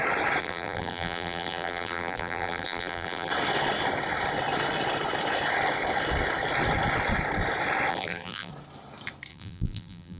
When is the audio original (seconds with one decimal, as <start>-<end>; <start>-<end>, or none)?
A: 0.0-0.4; 3.3-7.9; 8.5-9.3